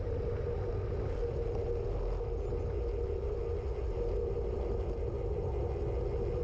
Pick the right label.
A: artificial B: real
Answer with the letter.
B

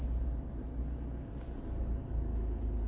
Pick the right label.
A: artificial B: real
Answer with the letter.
B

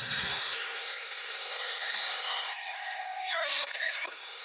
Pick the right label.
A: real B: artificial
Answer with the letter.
B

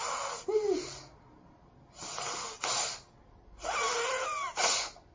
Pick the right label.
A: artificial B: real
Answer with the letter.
B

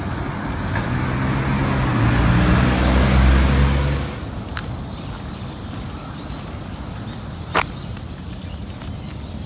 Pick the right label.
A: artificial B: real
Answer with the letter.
B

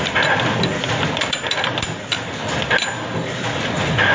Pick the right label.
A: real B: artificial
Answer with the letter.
A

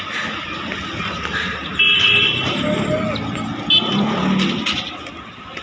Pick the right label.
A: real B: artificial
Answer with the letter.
A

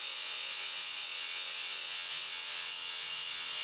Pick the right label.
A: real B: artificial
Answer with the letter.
B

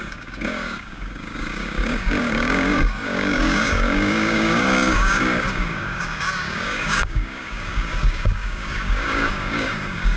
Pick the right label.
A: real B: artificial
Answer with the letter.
B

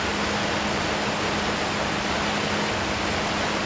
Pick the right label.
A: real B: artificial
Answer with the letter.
A